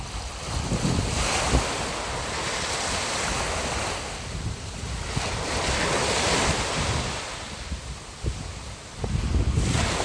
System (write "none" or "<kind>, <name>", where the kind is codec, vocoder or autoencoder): none